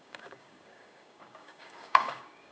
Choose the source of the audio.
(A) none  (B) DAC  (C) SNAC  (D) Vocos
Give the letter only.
B